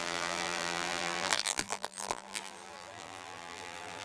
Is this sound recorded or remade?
remade